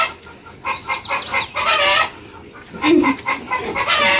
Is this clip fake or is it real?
real